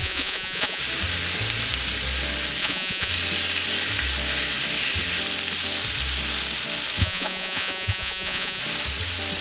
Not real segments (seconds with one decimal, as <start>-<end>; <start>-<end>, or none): 0.0-0.8; 2.6-3.1; 7.0-8.6